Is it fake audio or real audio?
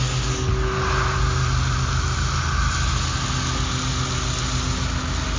real